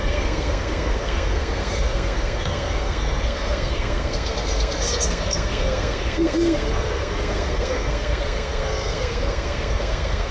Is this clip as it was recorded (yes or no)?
no